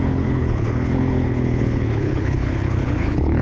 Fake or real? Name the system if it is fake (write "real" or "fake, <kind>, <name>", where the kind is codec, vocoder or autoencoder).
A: fake, codec, HILCodec